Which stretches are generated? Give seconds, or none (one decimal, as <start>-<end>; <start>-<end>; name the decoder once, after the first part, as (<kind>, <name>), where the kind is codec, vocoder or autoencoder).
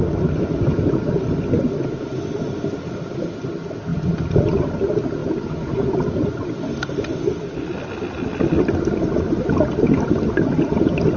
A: none